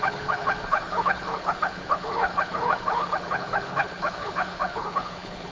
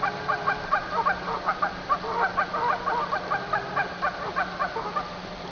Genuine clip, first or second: second